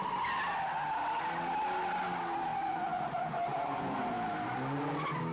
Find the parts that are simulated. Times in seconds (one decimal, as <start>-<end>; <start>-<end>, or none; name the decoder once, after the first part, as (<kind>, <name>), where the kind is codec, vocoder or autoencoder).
2.5-4.0 (vocoder, Vocos)